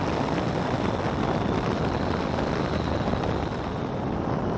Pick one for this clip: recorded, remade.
recorded